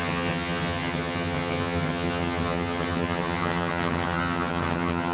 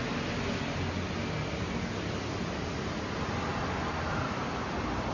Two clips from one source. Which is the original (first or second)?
second